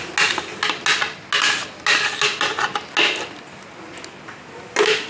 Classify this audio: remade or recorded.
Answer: recorded